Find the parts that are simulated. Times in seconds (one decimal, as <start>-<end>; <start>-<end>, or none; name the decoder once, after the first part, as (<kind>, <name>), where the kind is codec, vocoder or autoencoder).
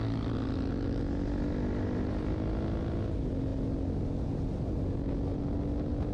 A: none